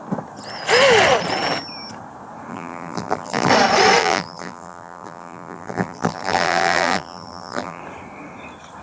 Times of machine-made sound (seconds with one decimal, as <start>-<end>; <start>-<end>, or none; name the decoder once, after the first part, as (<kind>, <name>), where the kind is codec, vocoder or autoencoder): 2.5-3.5 (vocoder, BigVGAN v2); 4.0-7.8